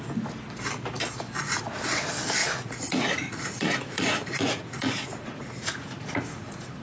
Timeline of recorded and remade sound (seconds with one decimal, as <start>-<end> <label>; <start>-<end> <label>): 0.0-2.4 recorded; 2.4-6.8 remade